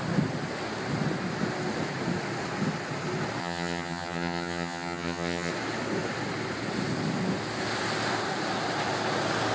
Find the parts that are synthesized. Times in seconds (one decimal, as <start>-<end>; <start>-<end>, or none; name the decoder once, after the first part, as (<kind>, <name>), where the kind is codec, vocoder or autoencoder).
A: 3.4-5.5 (vocoder, HiFi-GAN)